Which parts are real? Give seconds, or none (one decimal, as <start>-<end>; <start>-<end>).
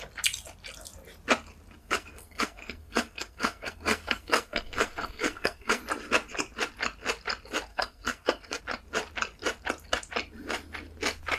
0.0-1.8; 5.8-7.7; 8.6-11.4